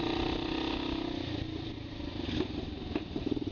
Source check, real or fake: real